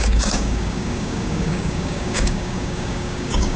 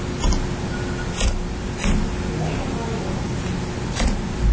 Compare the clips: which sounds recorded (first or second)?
second